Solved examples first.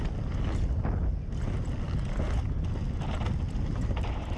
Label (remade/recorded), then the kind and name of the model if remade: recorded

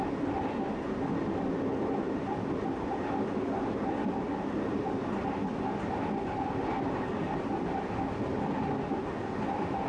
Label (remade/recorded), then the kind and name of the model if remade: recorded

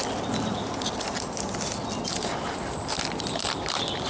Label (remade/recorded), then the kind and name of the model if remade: recorded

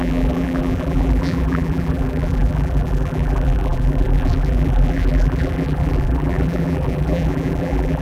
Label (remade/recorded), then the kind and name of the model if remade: remade, vocoder, BigVGAN v2